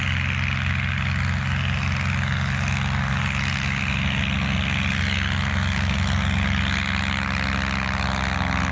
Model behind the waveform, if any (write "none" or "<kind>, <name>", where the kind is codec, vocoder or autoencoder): none